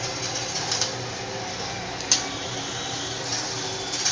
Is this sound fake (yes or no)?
no